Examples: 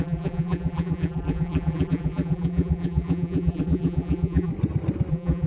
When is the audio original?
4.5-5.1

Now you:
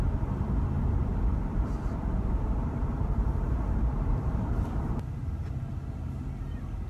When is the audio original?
0.0-1.1; 5.2-6.9

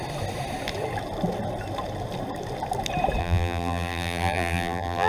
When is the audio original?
0.0-3.2

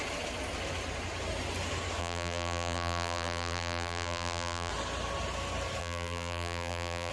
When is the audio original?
0.0-2.0; 4.7-5.8

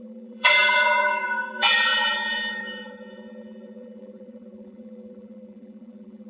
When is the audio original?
none

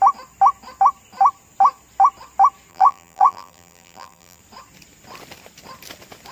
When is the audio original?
0.0-2.7; 4.4-6.3

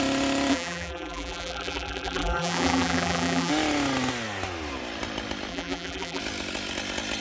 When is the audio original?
0.0-0.5; 3.5-5.5; 6.2-7.2